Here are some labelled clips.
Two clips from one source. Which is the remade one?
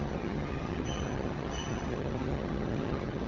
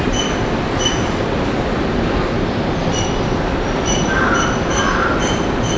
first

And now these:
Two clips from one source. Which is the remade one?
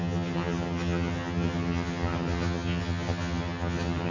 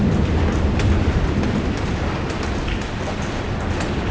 first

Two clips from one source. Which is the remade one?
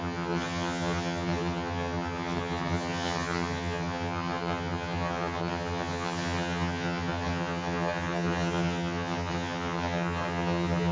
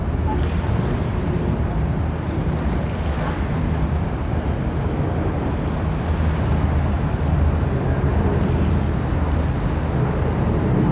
first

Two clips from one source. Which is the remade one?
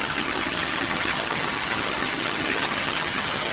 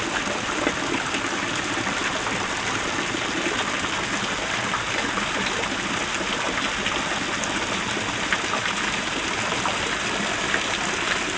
first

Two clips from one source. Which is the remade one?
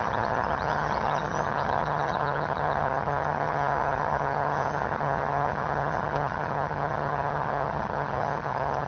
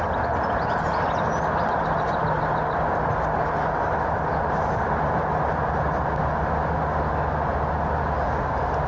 first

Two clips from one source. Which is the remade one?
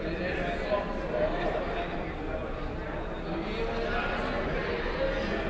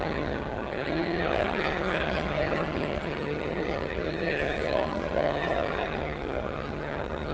second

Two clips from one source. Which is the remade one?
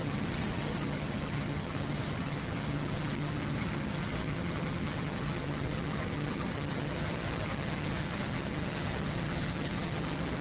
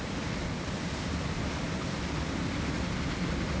first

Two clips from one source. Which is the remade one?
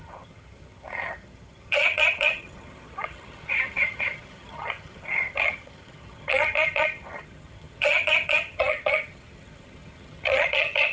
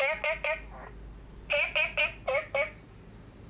first